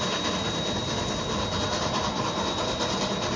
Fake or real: real